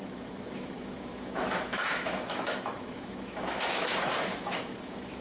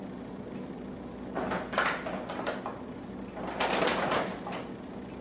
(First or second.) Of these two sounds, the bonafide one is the second